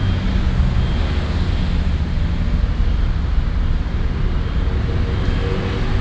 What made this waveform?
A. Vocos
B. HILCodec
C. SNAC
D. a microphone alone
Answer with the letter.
D